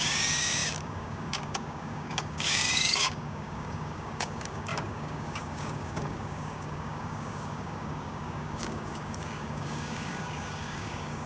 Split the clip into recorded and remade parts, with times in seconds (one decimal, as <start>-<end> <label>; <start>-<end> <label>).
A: 0.0-11.3 remade